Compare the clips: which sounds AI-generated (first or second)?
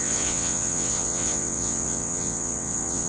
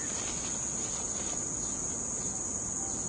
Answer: first